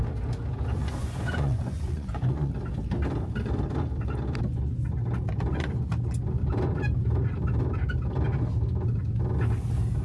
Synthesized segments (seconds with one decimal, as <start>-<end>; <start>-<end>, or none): 0.8-2.5